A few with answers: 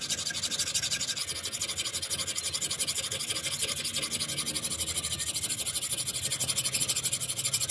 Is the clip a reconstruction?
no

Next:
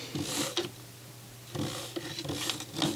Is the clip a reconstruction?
no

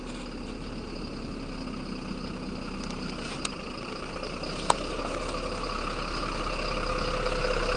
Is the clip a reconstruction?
no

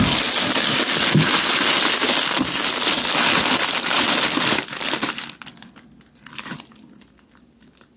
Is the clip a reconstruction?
no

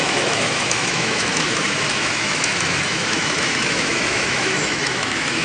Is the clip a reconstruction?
yes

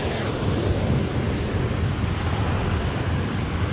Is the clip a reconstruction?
no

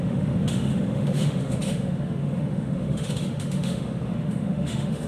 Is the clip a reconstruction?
yes